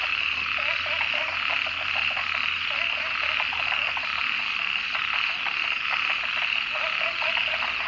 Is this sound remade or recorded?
recorded